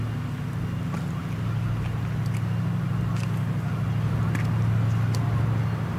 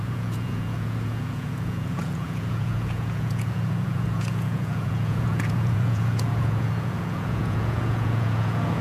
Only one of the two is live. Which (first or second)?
first